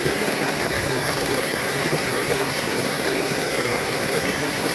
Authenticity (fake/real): fake